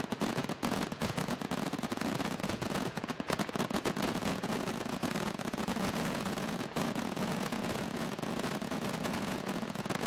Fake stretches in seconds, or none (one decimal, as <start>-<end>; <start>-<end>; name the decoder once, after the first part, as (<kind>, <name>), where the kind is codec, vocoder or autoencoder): 0.0-10.1 (vocoder, Vocos)